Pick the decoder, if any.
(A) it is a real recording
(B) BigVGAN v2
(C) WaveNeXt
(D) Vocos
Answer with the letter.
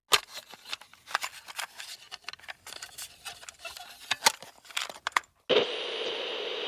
A